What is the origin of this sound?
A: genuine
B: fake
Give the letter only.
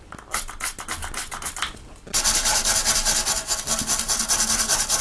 A